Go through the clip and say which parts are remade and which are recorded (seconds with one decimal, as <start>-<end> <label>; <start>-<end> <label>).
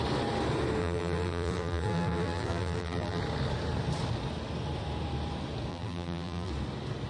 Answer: 0.0-0.8 recorded; 0.8-3.2 remade; 3.2-5.7 recorded; 5.7-6.5 remade; 6.5-7.1 recorded